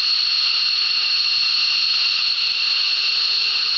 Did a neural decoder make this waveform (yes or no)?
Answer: no